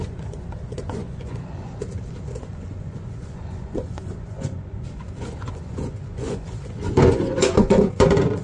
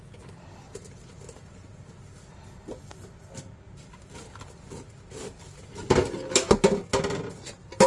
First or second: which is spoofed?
first